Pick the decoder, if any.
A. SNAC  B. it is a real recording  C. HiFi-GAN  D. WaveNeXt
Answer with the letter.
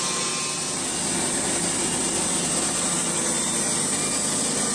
B